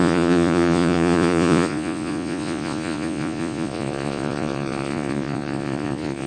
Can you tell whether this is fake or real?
fake